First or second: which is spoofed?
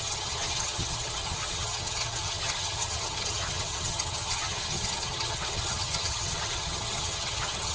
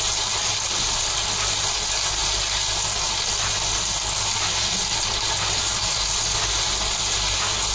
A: first